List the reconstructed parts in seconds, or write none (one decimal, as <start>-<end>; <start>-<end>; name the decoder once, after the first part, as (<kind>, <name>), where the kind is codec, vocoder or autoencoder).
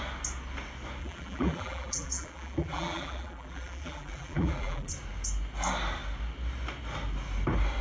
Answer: 1.0-4.9 (vocoder, BigVGAN v2)